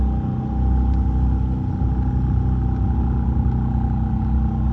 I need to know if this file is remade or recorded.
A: recorded